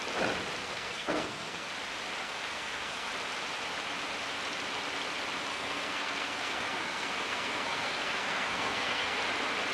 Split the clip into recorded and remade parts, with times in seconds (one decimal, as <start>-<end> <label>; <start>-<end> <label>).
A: 0.0-0.6 recorded; 0.6-1.7 remade; 1.7-2.2 recorded; 2.2-3.1 remade; 3.1-5.5 recorded; 5.5-9.2 remade; 9.2-9.7 recorded

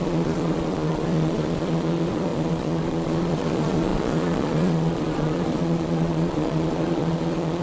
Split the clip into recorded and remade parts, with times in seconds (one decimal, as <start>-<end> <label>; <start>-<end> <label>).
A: 0.0-7.6 remade

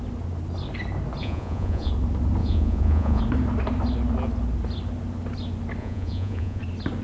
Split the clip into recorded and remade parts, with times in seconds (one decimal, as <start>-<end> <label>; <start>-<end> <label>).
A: 0.0-1.2 recorded; 1.2-1.9 remade; 1.9-2.4 recorded; 2.4-3.2 remade; 3.2-5.8 recorded; 5.8-6.6 remade; 6.6-7.0 recorded

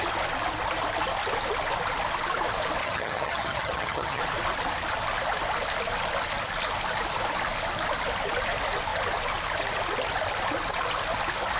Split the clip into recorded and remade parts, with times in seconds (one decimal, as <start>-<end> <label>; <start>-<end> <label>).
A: 0.0-2.8 recorded; 2.8-4.2 remade; 4.2-11.6 recorded

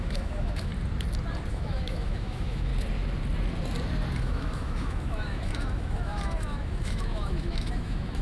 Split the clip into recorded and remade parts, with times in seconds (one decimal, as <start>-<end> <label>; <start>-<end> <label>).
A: 0.0-0.7 remade; 0.7-1.5 recorded; 1.5-2.7 remade; 2.7-4.2 recorded; 4.2-8.2 remade

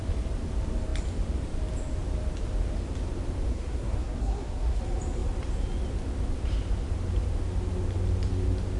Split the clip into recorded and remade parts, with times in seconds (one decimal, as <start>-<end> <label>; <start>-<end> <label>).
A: 0.0-3.5 recorded; 3.5-4.8 remade; 4.8-8.8 recorded